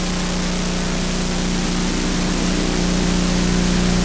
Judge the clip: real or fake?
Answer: real